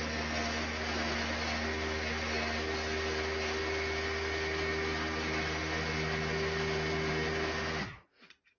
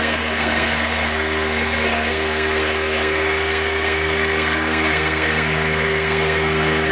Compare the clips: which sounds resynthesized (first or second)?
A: second